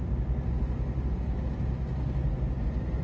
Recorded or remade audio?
recorded